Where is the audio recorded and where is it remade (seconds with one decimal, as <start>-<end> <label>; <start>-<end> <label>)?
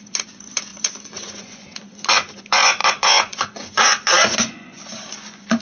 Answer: 0.0-5.6 remade